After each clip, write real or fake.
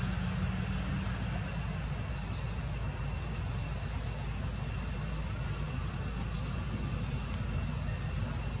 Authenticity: real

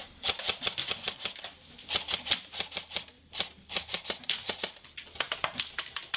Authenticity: real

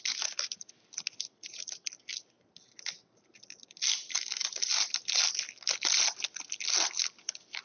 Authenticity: real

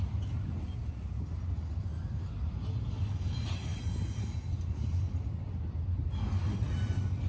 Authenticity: real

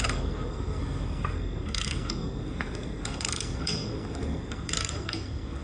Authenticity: fake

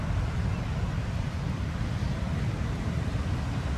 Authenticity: real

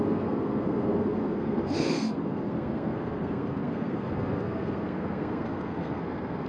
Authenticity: fake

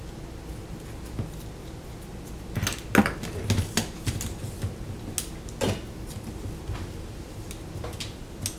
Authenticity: real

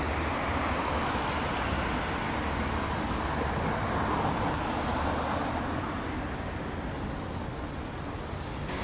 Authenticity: real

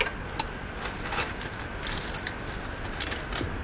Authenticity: real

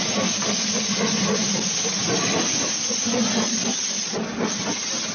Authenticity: real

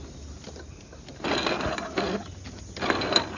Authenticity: real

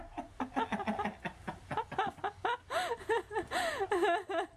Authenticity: real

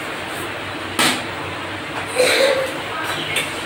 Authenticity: real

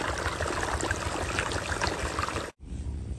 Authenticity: real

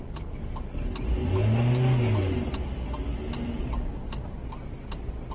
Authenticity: real